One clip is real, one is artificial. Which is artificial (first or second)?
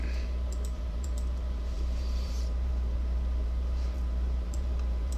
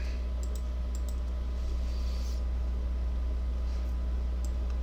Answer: first